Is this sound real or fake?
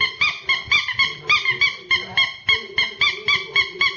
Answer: fake